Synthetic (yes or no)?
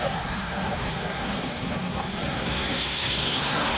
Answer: yes